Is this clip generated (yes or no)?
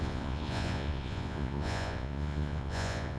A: yes